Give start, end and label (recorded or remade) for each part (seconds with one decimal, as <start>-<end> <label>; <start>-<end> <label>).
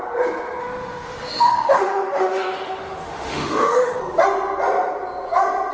0.0-0.6 recorded; 0.6-4.0 remade; 4.0-5.7 recorded